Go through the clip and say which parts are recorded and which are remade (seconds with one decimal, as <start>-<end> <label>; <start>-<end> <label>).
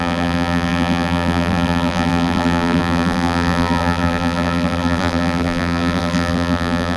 0.0-7.0 remade